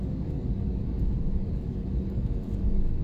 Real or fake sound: fake